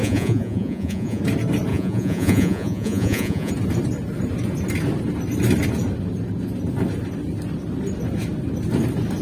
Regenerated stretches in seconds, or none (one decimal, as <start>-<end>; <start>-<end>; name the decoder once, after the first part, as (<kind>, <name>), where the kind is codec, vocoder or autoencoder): 0.0-1.2 (vocoder, Vocos); 1.7-3.5